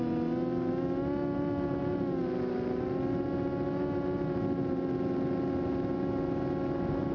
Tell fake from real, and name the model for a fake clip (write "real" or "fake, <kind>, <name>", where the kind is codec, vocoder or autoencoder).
real